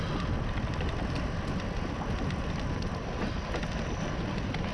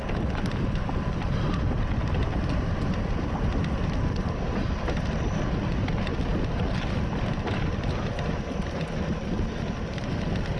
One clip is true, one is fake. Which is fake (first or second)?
second